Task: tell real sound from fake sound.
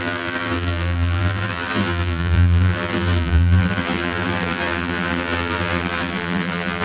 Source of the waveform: fake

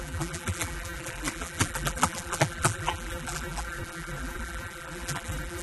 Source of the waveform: fake